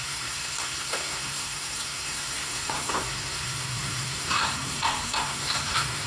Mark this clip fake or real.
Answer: fake